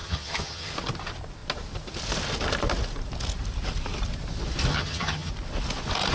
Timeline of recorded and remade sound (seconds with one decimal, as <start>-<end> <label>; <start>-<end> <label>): 0.0-0.7 remade; 0.7-4.7 recorded; 4.7-5.3 remade; 5.3-6.1 recorded